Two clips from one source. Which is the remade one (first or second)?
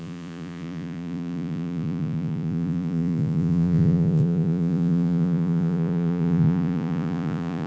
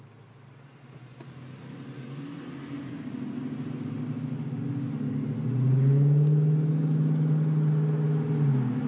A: first